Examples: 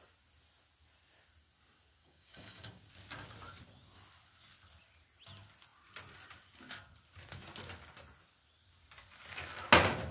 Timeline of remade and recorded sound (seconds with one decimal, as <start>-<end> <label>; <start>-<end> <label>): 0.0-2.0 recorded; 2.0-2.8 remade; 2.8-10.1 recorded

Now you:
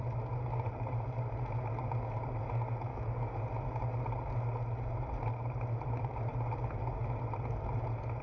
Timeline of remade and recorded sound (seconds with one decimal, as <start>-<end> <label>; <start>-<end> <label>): 0.0-2.9 recorded; 2.9-3.4 remade; 3.4-8.2 recorded

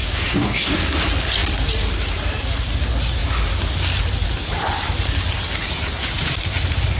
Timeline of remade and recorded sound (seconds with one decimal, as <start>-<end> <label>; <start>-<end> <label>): 0.0-0.6 remade; 0.6-7.0 recorded

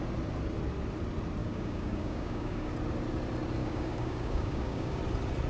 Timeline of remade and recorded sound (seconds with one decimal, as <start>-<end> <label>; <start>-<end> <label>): 0.0-1.4 recorded; 1.4-2.7 remade; 2.7-3.6 recorded; 3.6-5.0 remade; 5.0-5.5 recorded